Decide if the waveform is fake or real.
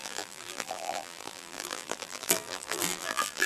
fake